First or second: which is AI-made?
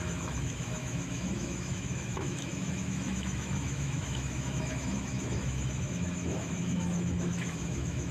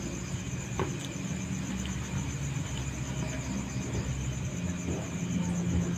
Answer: first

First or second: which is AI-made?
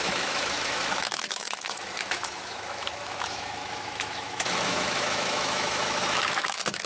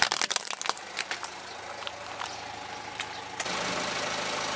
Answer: first